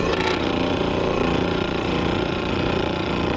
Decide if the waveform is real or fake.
fake